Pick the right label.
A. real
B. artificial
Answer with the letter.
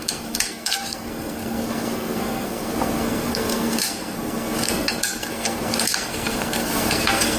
B